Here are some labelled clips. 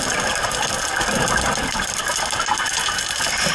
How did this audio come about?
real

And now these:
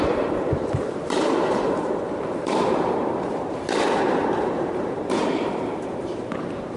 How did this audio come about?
fake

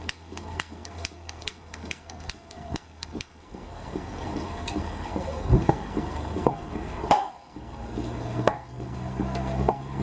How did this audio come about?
fake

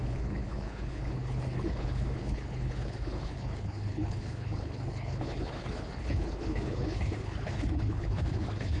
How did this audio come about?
fake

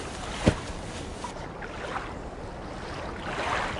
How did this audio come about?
real